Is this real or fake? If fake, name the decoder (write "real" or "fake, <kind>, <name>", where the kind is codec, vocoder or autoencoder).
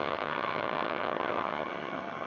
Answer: fake, vocoder, HiFi-GAN